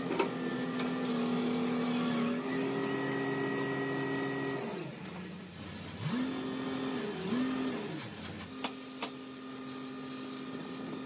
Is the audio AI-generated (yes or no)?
no